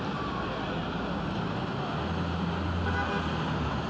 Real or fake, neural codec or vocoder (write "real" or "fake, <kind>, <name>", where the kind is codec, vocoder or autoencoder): real